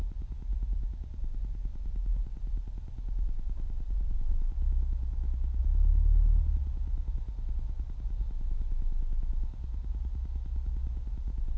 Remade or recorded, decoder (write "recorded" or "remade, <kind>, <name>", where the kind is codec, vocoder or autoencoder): recorded